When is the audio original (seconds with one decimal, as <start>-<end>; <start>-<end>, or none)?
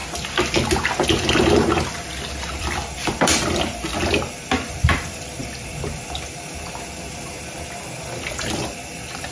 0.0-2.6